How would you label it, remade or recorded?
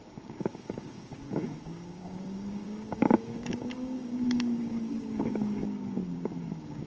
remade